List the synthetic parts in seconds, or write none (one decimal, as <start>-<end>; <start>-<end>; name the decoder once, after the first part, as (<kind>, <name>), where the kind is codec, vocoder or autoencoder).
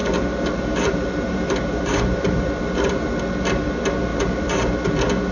0.0-3.2 (vocoder, BigVGAN v2); 4.1-4.8